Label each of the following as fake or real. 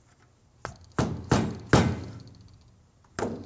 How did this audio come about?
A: real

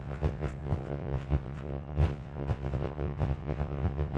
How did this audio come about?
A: fake